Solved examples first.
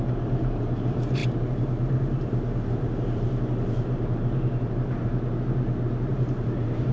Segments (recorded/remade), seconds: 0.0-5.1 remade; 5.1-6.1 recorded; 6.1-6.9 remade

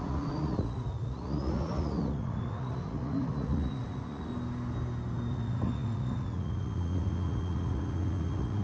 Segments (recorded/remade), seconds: 0.0-4.3 remade; 4.3-5.3 recorded; 5.3-8.6 remade